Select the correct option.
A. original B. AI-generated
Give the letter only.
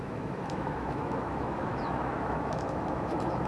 B